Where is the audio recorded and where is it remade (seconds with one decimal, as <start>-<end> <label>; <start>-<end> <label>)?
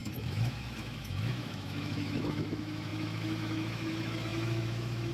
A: 0.0-5.1 remade